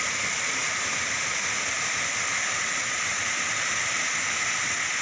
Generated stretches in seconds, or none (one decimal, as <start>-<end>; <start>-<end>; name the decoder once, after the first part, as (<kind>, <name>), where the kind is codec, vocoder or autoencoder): none